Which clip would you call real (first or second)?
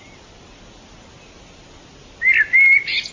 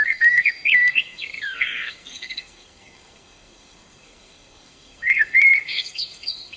first